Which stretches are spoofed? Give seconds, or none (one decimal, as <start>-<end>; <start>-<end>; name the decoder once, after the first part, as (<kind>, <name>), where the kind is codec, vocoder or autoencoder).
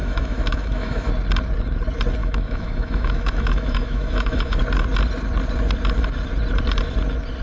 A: 0.0-1.1 (autoencoder, DAC-VAE); 2.2-4.6